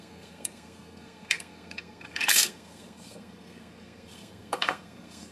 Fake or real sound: fake